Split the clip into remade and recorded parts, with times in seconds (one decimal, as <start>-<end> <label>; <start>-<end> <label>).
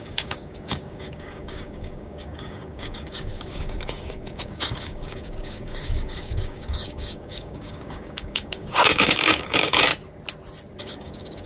0.0-9.9 remade; 9.9-10.8 recorded; 10.8-11.5 remade